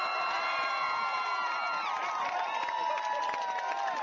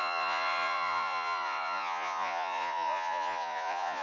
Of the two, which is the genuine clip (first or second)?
first